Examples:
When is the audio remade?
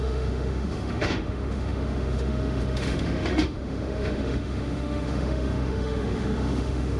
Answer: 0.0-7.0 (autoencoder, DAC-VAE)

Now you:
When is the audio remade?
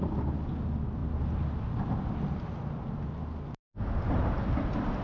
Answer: none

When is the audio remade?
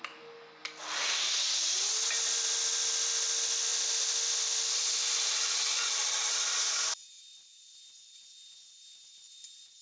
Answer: 0.6-1.3 (vocoder, BigVGAN v2); 3.7-6.2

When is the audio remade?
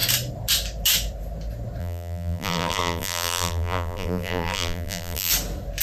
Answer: 1.8-5.3 (vocoder, BigVGAN v2)